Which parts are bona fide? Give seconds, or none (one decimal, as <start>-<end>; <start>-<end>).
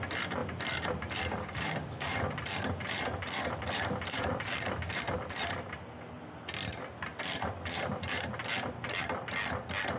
0.0-0.4; 5.5-7.1; 8.3-10.0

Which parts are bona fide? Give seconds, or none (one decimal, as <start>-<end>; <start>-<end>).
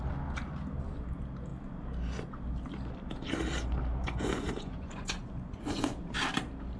0.0-4.0; 5.8-6.8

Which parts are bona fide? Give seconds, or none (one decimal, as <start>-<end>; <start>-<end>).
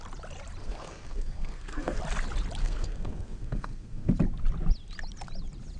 0.0-0.6; 2.0-2.6; 4.1-5.8